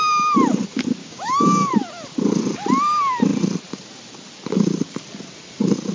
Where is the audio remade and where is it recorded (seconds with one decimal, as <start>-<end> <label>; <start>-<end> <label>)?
0.0-1.0 recorded; 1.0-1.7 remade; 1.7-5.9 recorded